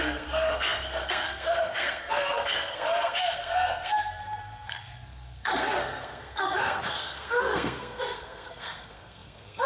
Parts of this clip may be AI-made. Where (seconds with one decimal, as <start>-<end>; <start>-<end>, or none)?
0.0-9.7